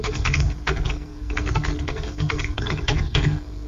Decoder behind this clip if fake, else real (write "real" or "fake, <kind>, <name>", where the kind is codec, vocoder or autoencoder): fake, codec, SNAC